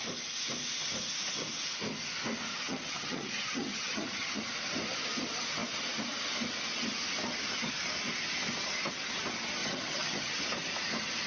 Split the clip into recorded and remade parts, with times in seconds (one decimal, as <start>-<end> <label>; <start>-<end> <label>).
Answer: 0.0-2.5 recorded; 2.5-4.4 remade; 4.4-9.6 recorded; 9.6-10.4 remade; 10.4-11.3 recorded